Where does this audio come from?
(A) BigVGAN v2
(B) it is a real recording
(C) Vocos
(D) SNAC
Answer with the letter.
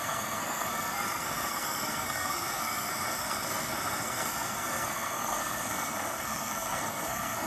D